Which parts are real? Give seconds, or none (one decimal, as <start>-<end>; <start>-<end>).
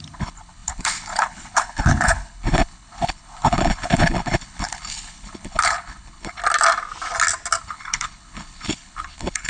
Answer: 6.4-7.6